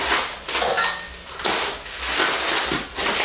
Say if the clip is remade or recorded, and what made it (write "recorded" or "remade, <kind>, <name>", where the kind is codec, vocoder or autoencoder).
recorded